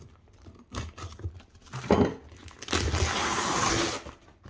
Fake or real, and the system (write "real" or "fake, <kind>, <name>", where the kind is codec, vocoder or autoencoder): real